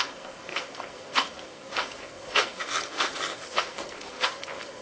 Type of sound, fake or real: fake